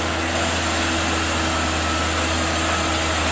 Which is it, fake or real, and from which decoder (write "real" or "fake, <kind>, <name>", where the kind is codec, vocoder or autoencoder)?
real